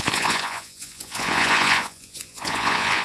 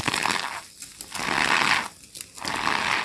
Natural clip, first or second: second